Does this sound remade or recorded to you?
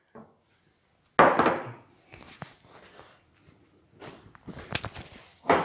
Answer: recorded